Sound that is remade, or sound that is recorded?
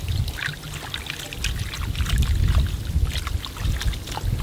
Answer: recorded